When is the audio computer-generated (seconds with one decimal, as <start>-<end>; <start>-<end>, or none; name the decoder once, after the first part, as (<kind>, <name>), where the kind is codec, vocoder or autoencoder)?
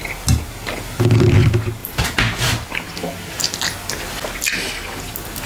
none